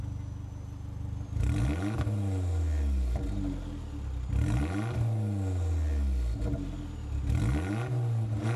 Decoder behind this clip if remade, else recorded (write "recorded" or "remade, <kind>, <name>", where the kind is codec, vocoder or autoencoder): recorded